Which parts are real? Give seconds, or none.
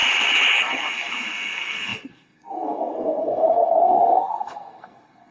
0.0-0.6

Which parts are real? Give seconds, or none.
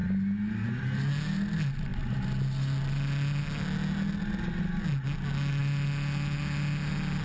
0.0-7.2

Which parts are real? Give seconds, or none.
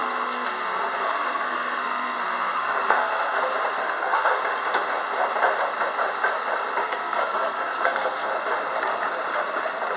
3.4-3.8; 4.4-6.8; 8.3-10.0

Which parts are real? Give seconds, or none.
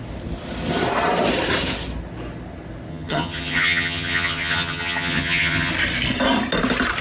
0.0-2.9; 5.7-7.0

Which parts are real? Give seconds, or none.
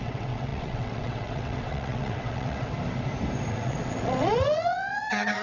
2.7-3.5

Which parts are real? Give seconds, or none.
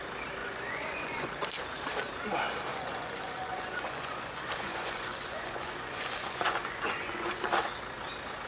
0.0-0.4; 1.6-2.7; 7.5-8.5